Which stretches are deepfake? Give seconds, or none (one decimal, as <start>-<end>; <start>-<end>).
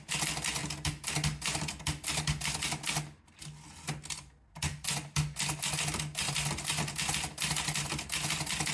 none